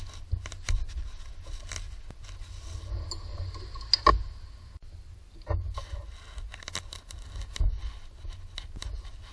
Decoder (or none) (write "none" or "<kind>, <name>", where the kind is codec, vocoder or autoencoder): none